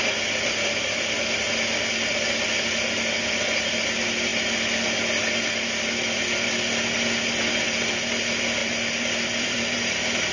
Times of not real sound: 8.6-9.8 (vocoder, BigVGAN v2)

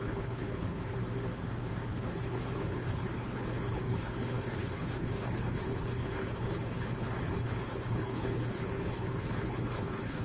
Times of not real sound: 0.0-1.0 (codec, HILCodec); 1.9-10.2

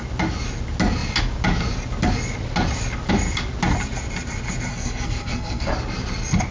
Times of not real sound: 4.7-5.7 (codec, SNAC)

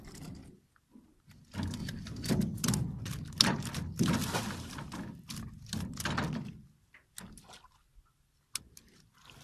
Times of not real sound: 1.8-2.3 (vocoder, BigVGAN v2)

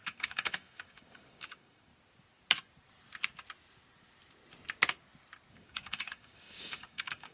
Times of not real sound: 0.0-1.9 (codec, DAC); 5.5-7.3

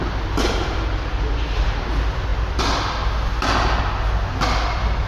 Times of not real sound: none

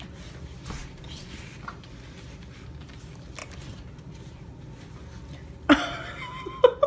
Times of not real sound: 3.4-4.5 (vocoder, BigVGAN v2)

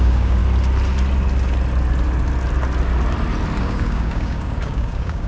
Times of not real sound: 0.0-0.4 (codec, DAC); 3.6-5.3